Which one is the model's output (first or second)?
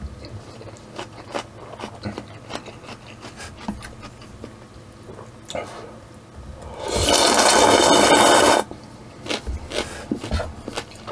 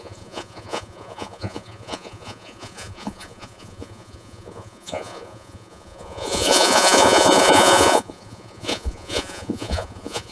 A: second